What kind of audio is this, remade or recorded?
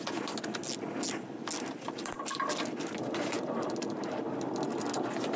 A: recorded